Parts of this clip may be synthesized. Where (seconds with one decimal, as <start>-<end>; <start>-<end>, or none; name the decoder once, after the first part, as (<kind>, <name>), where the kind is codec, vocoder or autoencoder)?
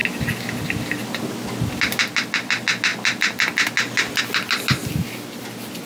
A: none